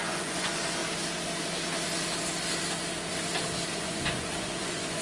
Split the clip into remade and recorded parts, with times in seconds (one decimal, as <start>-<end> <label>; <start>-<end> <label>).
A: 0.0-0.8 remade; 0.8-3.8 recorded; 3.8-5.0 remade